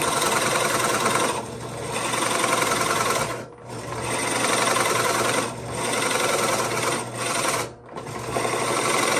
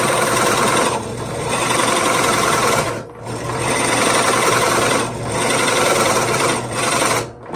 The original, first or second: first